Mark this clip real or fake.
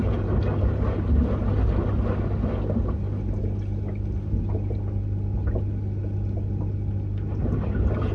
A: real